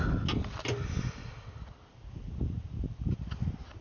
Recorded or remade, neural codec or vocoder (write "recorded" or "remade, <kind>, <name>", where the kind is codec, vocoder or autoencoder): recorded